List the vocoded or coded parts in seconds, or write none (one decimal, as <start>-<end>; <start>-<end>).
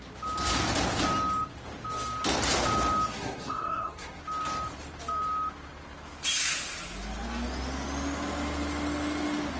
3.1-4.2